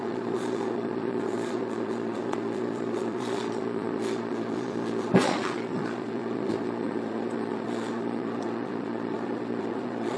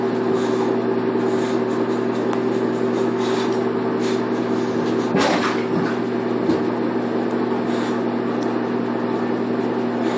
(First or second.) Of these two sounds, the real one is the second